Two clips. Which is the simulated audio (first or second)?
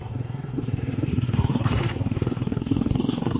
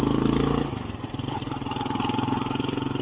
first